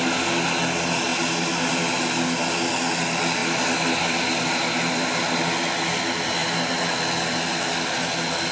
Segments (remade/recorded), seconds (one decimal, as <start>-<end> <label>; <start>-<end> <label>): 0.0-1.1 recorded; 1.1-1.8 remade; 1.8-3.4 recorded; 3.4-4.2 remade; 4.2-8.5 recorded